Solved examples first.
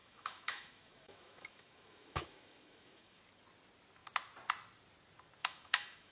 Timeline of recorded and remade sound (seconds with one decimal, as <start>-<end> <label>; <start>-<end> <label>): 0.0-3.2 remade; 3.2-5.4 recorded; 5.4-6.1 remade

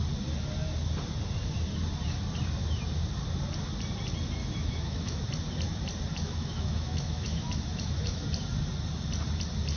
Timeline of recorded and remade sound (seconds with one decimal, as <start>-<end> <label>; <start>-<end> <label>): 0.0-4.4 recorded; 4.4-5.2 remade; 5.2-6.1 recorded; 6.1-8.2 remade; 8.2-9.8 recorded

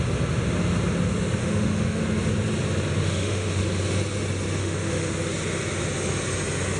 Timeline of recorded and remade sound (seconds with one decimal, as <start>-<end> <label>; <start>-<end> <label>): 0.0-1.4 recorded; 1.4-2.0 remade; 2.0-3.0 recorded; 3.0-3.6 remade; 3.6-4.6 recorded; 4.6-5.1 remade; 5.1-6.8 recorded

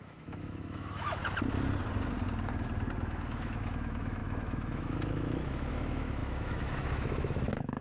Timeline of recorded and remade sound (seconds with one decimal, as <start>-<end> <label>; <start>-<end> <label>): 0.0-1.2 remade; 1.2-3.0 recorded; 3.0-7.8 remade

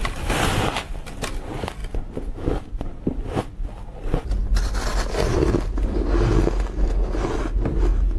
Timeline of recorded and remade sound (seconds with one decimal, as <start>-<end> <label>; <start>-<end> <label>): 0.0-8.2 recorded

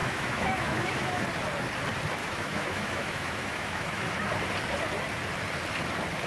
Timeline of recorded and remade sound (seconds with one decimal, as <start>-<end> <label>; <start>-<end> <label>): 0.0-1.2 remade; 1.2-2.2 recorded; 2.2-4.1 remade; 4.1-6.3 recorded

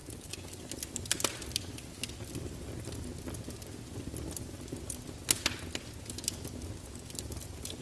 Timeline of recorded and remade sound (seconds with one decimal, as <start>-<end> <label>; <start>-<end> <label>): 0.0-7.8 recorded

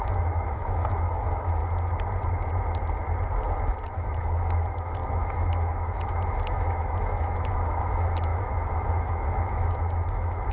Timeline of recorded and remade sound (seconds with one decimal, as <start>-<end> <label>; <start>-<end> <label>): 0.0-1.6 remade; 1.6-3.9 recorded; 3.9-10.5 remade